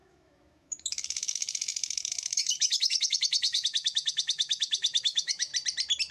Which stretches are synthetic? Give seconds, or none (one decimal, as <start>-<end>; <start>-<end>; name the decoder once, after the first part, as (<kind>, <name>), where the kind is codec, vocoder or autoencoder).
0.0-5.5 (autoencoder, DAC-VAE)